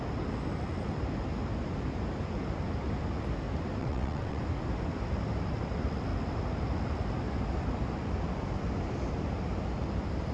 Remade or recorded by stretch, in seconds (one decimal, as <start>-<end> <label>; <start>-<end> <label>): 0.0-3.8 recorded; 3.8-4.4 remade; 4.4-10.3 recorded